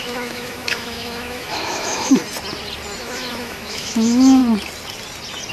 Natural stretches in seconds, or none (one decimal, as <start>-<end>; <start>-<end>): 2.2-3.0; 4.4-5.5